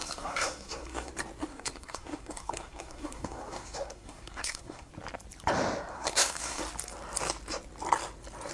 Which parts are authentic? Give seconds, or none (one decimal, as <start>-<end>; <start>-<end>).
1.1-1.5; 4.9-5.9; 6.6-8.5